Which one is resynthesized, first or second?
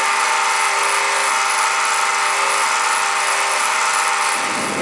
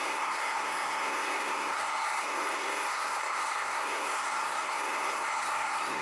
second